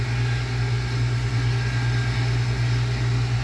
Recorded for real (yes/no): yes